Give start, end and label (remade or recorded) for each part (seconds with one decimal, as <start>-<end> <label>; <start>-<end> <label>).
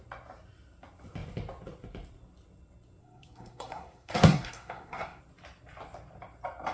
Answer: 0.0-3.0 recorded; 3.0-5.2 remade; 5.2-6.7 recorded